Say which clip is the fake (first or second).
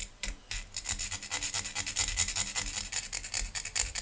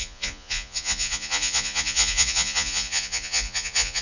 second